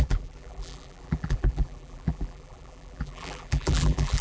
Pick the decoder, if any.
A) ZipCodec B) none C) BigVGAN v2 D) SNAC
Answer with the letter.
C